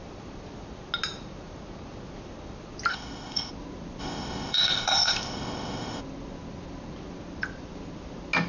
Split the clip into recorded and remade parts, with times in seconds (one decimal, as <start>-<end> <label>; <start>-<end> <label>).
0.0-2.9 recorded; 2.9-3.5 remade; 3.5-4.0 recorded; 4.0-6.0 remade; 6.0-8.5 recorded